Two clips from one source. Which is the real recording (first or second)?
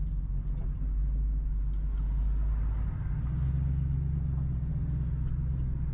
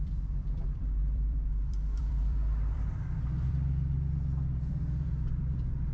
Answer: first